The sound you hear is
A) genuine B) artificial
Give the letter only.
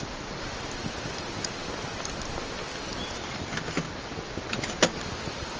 A